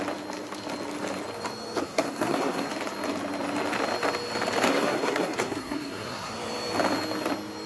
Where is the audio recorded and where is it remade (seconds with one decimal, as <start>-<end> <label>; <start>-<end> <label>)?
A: 0.0-1.8 recorded; 1.8-2.7 remade; 2.7-4.7 recorded; 4.7-6.3 remade; 6.3-7.7 recorded